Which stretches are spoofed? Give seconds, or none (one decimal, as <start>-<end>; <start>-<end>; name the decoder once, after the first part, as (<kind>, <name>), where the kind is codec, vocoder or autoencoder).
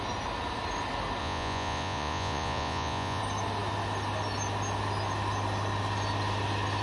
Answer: 1.2-3.2 (vocoder, Vocos)